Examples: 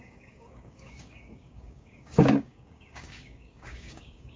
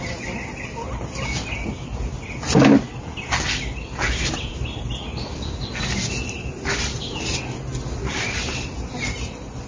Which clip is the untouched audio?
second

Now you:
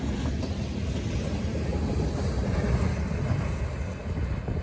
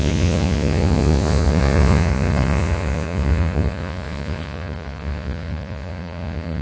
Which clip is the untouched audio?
first